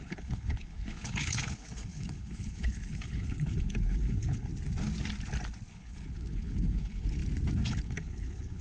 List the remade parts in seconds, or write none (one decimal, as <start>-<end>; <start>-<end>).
0.0-4.5; 5.7-7.2; 7.7-8.6